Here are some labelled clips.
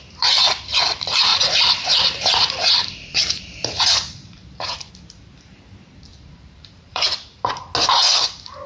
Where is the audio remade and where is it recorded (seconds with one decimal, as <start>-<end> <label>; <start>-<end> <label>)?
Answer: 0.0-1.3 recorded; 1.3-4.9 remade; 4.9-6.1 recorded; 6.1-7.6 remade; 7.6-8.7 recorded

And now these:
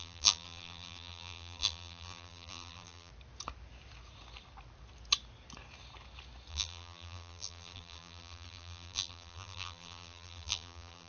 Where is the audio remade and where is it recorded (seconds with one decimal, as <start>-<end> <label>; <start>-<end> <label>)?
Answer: 0.0-3.1 remade; 3.1-6.5 recorded; 6.5-11.1 remade

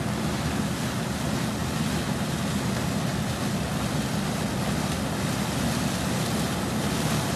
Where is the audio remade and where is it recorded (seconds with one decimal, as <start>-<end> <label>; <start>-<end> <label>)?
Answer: 0.0-1.6 recorded; 1.6-2.4 remade; 2.4-7.4 recorded

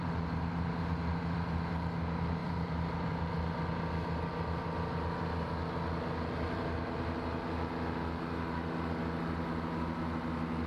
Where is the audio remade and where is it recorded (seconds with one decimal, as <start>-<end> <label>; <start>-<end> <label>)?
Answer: 0.0-2.4 recorded; 2.4-3.1 remade; 3.1-10.7 recorded

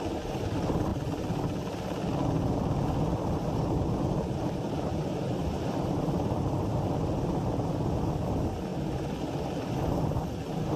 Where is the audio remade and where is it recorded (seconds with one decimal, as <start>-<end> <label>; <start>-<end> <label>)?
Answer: 0.0-0.9 recorded; 0.9-1.4 remade; 1.4-4.1 recorded; 4.1-7.7 remade; 7.7-10.8 recorded

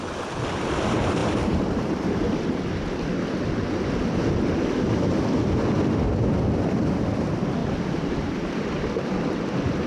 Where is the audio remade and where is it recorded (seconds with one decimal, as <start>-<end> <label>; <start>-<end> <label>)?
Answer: 0.0-1.2 recorded; 1.2-2.1 remade; 2.1-7.6 recorded; 7.6-8.4 remade; 8.4-9.9 recorded

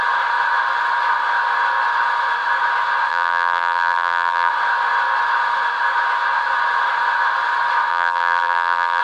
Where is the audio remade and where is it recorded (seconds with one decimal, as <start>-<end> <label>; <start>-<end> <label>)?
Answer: 0.0-3.1 recorded; 3.1-4.5 remade; 4.5-7.9 recorded; 7.9-9.0 remade

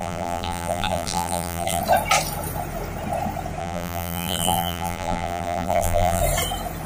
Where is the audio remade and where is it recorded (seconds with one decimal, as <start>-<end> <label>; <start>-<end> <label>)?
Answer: 0.0-1.8 remade; 1.8-3.6 recorded; 3.6-6.2 remade; 6.2-6.9 recorded